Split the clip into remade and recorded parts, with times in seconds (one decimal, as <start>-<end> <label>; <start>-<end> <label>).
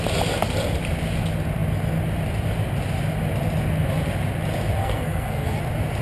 0.0-4.8 recorded; 4.8-5.6 remade; 5.6-6.0 recorded